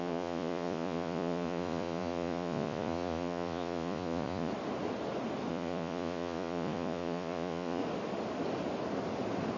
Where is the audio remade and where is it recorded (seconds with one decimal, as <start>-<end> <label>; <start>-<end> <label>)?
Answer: 0.0-4.5 remade; 4.5-5.5 recorded; 5.5-7.8 remade; 7.8-9.6 recorded